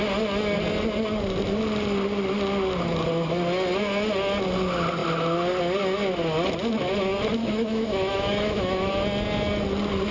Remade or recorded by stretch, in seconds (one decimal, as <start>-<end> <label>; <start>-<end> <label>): 0.0-7.4 recorded; 7.4-8.9 remade; 8.9-10.1 recorded